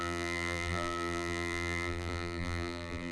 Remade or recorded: remade